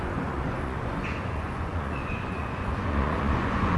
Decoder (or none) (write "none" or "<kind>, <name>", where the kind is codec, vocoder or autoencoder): vocoder, Vocos